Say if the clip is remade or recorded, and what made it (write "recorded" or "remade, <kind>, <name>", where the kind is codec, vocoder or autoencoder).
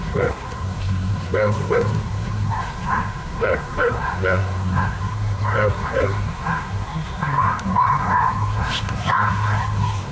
remade, codec, SNAC